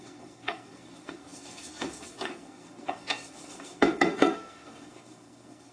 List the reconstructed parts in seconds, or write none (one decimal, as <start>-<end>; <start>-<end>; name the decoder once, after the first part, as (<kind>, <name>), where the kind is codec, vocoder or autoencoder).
0.0-5.7 (codec, SNAC)